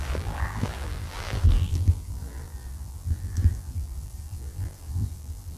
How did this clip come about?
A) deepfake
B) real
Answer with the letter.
A